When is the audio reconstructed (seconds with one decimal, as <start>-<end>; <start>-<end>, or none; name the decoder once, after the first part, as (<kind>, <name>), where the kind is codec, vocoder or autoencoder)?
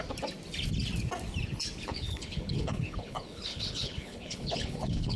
1.8-5.2 (codec, HILCodec)